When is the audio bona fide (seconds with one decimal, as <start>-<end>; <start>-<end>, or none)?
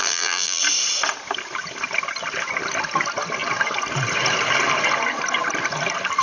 0.6-6.2